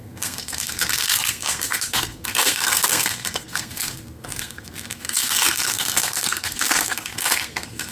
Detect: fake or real fake